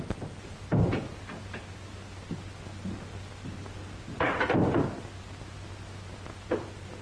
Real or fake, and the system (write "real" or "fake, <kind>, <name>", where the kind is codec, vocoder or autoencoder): real